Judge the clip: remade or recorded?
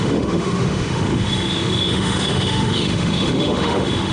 remade